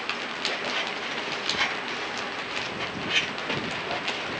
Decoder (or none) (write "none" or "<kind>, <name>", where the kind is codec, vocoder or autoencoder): none